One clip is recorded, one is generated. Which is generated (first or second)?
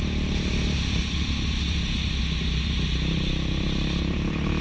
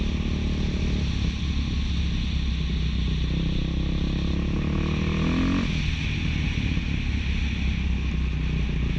first